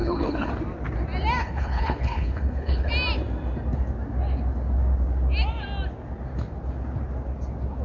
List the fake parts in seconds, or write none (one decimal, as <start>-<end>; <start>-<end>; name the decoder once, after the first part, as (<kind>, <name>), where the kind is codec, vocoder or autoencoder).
0.0-0.5 (codec, HILCodec); 1.4-2.9